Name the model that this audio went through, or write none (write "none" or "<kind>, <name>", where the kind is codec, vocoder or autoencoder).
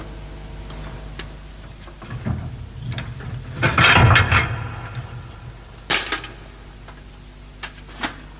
none